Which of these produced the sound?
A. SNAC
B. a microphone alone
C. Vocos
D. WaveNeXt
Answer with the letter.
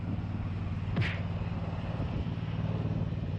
B